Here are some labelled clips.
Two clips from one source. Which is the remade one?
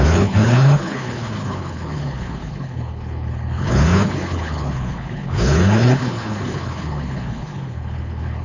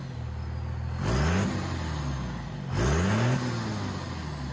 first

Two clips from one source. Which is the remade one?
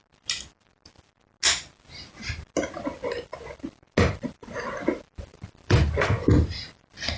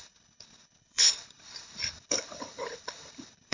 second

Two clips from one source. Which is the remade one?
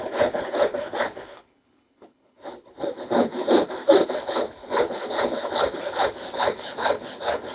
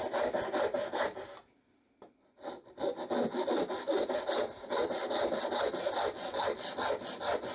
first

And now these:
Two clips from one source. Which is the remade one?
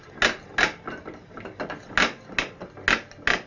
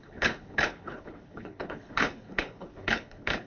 second